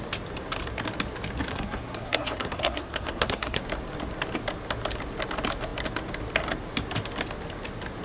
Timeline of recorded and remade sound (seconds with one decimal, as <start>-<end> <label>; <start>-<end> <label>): 0.0-1.5 recorded; 1.5-3.6 remade; 3.6-8.0 recorded